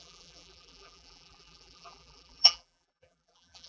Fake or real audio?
fake